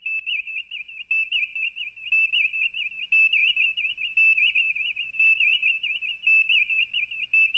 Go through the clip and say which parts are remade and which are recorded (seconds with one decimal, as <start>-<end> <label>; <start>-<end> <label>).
0.0-7.6 recorded

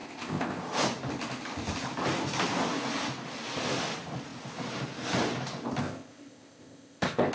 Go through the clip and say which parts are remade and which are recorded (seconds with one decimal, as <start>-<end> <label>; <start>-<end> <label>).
0.0-0.6 remade; 0.6-5.8 recorded; 5.8-7.3 remade